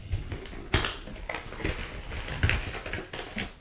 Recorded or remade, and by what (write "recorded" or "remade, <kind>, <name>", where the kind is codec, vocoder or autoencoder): recorded